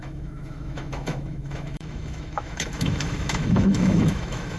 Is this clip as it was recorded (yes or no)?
no